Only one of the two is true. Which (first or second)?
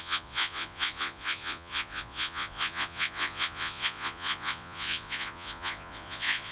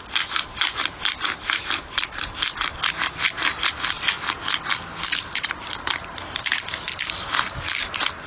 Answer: second